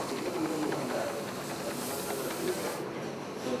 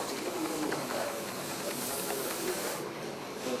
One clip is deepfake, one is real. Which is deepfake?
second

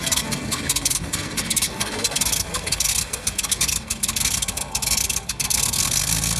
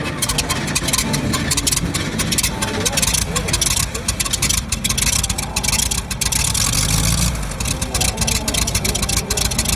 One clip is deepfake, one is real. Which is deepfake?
first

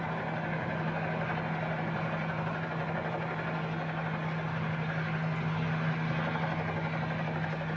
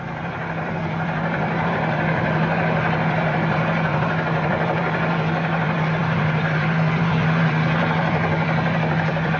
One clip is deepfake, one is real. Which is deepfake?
second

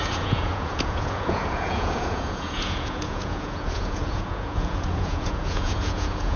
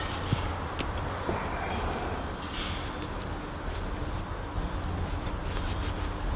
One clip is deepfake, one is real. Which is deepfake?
first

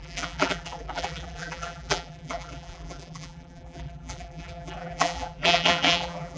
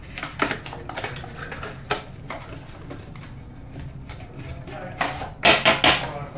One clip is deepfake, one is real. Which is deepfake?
first